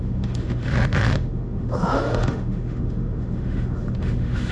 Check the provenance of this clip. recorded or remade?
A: remade